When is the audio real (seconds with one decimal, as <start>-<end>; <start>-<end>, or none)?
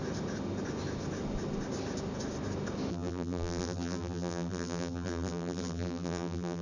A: 0.0-2.9